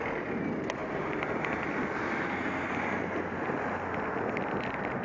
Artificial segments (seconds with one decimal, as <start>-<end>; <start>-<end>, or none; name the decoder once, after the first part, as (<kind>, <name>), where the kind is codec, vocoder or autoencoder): none

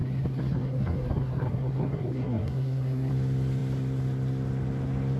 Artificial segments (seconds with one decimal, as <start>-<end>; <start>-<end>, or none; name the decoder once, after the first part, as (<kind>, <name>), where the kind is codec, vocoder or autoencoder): 0.0-3.1 (codec, SNAC)

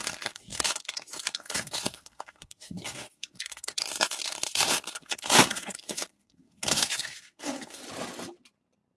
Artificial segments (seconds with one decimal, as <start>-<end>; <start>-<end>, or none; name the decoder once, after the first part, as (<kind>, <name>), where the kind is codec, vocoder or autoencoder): 0.0-7.8 (codec, SNAC)